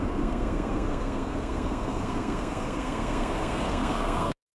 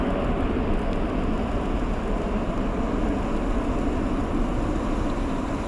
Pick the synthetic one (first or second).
first